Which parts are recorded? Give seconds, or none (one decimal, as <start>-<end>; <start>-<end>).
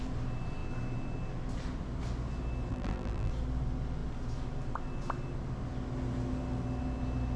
0.0-2.7; 3.3-7.4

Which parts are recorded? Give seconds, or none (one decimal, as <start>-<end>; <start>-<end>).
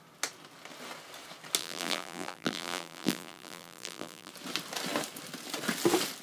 0.0-1.6; 4.3-6.2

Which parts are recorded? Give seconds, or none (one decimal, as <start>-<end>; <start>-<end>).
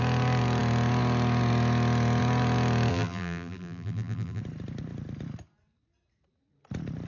0.0-2.9; 4.4-7.1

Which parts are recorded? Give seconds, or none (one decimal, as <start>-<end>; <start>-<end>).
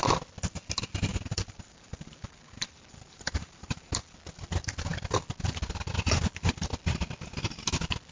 0.0-1.1; 3.9-8.1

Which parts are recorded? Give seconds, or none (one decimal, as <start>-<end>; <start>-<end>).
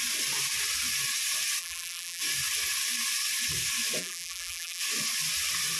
0.0-1.6; 2.2-4.0; 4.8-5.8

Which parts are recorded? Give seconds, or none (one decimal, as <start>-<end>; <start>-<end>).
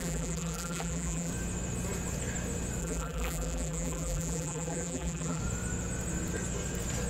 1.3-2.8; 5.4-7.1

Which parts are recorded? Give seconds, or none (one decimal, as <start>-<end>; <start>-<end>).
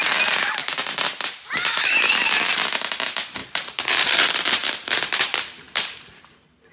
0.0-0.6; 2.0-3.4; 6.3-6.7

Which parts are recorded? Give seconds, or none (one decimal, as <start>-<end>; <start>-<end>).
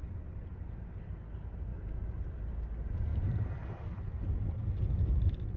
0.0-1.7; 2.2-3.1; 4.1-5.6